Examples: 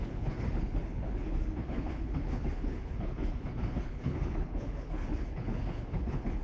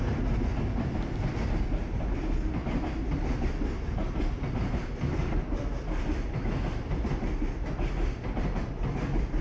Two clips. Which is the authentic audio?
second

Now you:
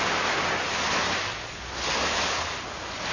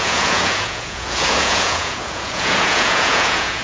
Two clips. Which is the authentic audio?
first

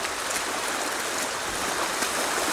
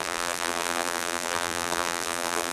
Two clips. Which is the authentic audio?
first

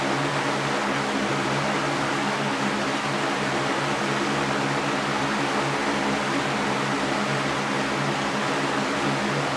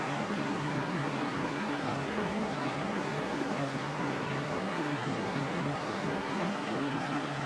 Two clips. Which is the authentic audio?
first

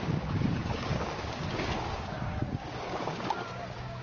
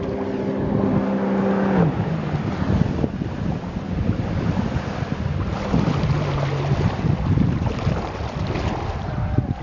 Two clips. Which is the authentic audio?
second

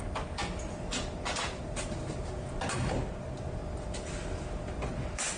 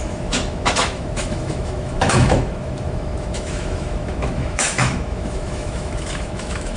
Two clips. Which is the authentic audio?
first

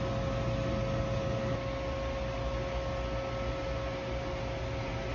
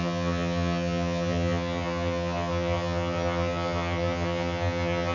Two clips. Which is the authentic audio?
first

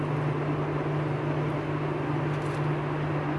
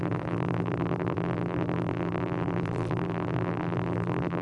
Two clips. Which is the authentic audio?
first